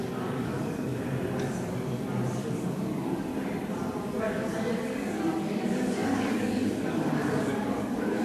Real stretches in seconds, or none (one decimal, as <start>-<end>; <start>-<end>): 0.9-2.4; 3.3-4.2